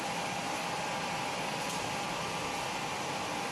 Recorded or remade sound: recorded